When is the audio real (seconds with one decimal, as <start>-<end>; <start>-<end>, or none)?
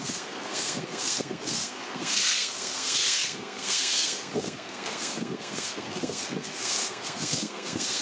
none